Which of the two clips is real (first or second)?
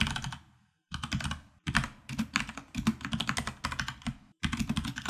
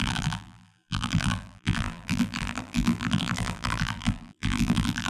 first